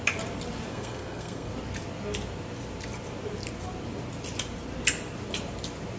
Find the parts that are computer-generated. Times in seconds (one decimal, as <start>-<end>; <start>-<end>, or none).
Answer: 0.7-1.5